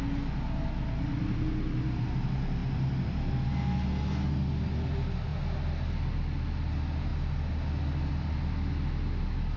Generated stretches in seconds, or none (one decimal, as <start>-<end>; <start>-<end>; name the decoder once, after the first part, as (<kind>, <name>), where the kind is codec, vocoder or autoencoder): none